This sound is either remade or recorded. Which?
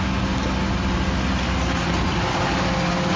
recorded